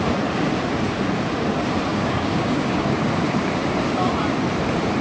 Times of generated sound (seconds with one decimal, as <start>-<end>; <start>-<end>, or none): 1.9-3.1

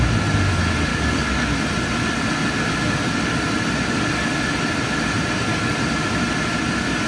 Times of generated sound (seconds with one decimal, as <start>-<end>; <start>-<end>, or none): 0.9-1.5

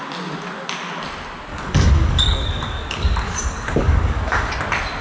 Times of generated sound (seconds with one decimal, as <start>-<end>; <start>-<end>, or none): 1.5-4.5

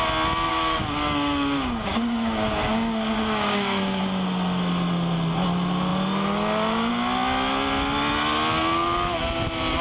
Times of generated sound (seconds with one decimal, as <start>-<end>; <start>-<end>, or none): 0.5-4.0